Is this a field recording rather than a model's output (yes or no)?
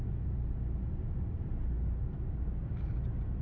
yes